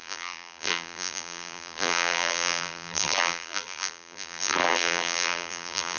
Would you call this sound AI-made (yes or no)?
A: yes